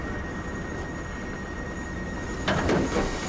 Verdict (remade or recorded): recorded